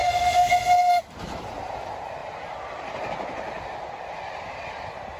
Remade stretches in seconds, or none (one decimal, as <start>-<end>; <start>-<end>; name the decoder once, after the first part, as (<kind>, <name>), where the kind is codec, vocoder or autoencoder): 0.0-0.5 (codec, SNAC)